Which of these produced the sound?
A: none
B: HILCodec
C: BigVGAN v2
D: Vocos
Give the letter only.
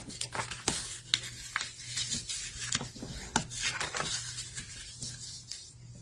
A